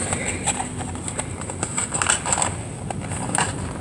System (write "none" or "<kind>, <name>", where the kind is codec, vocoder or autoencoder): none